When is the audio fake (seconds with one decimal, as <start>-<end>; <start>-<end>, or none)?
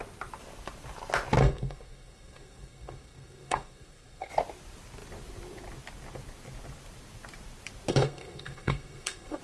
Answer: 1.4-4.3; 7.9-9.4